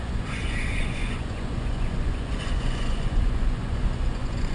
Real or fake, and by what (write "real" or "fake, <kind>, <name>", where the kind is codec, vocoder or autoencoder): fake, vocoder, Vocos